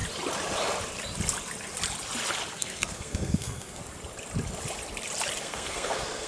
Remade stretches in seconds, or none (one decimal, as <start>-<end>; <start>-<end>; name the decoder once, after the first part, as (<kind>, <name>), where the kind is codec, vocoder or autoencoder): 2.5-3.8 (codec, SNAC); 5.4-6.3